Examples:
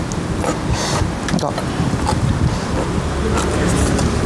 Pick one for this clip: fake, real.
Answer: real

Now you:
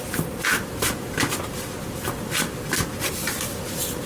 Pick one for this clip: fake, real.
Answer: real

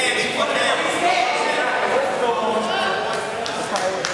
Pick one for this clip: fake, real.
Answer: real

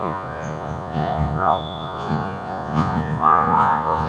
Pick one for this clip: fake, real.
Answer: fake